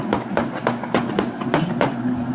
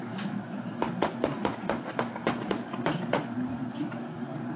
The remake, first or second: second